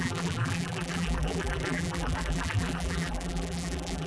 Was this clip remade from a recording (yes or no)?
yes